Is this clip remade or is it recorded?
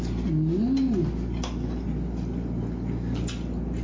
recorded